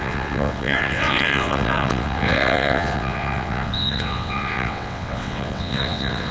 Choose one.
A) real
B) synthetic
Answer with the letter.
B